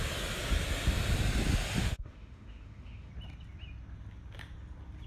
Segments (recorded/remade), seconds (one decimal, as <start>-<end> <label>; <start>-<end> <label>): 0.0-1.8 recorded; 1.8-3.1 remade; 3.1-5.1 recorded